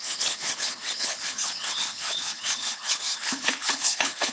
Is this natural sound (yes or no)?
no